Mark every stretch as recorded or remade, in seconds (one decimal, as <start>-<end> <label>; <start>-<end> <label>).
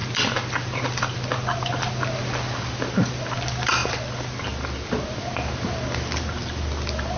0.0-3.2 remade; 3.2-7.2 recorded